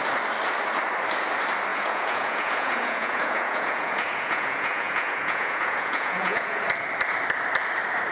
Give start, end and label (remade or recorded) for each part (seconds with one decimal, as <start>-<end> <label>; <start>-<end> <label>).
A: 0.0-1.7 recorded; 1.7-6.6 remade; 6.6-8.1 recorded